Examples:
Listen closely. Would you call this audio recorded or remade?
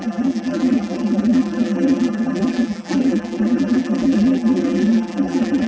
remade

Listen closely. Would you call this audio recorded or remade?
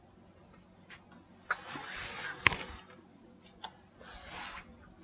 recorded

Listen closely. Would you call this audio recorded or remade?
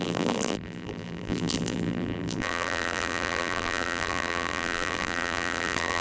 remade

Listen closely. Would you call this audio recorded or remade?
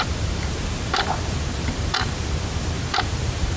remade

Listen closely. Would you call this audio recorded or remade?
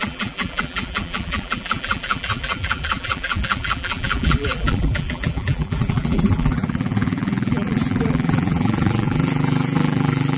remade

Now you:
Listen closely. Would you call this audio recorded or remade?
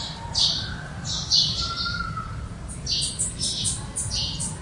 remade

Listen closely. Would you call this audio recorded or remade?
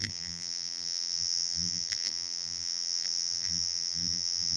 remade